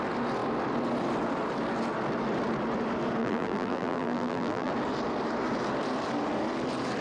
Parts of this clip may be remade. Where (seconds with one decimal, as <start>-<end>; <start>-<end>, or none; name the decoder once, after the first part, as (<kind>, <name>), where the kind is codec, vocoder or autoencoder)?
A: 3.2-4.7 (vocoder, BigVGAN v2)